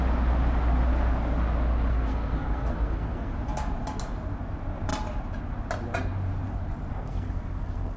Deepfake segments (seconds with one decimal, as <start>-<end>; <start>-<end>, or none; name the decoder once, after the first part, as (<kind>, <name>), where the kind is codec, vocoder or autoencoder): 1.9-3.3 (codec, SNAC); 6.9-8.0